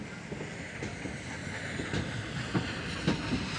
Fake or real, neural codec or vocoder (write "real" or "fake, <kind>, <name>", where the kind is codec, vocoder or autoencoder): real